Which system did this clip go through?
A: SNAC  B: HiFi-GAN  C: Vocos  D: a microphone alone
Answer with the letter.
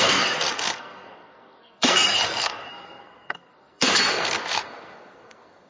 A